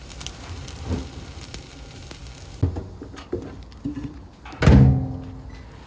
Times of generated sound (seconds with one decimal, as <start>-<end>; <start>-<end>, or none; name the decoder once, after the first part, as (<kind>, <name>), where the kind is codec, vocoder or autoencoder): none